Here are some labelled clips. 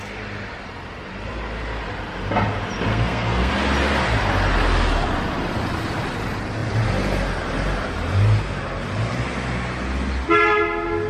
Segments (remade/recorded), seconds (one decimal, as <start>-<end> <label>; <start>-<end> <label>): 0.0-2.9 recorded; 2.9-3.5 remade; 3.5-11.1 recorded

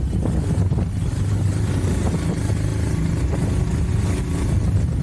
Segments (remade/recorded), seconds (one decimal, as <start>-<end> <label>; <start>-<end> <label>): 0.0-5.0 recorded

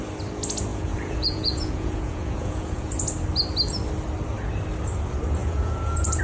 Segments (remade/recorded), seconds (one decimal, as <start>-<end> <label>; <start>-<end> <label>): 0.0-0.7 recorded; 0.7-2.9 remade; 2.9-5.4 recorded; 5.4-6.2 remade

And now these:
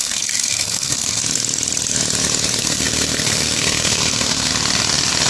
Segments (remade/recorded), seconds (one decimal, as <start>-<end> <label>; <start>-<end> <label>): 0.0-1.2 remade; 1.2-2.6 recorded; 2.6-4.5 remade; 4.5-5.3 recorded